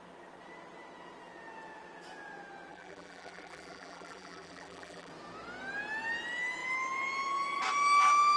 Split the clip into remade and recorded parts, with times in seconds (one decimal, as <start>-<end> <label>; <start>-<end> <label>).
0.0-2.7 recorded; 2.7-5.1 remade; 5.1-8.4 recorded